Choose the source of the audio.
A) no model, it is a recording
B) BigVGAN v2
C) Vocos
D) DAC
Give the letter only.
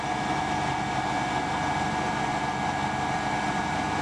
A